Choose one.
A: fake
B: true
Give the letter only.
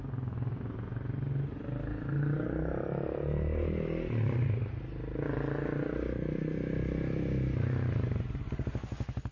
B